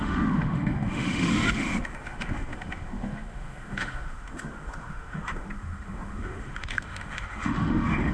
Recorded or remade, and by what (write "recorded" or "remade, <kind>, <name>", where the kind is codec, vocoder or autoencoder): remade, autoencoder, DAC-VAE